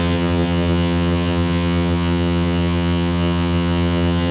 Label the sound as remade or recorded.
remade